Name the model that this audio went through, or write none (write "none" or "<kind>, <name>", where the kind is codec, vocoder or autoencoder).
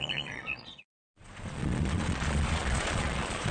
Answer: vocoder, Vocos